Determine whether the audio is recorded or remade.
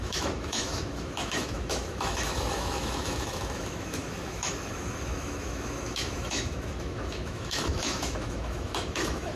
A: remade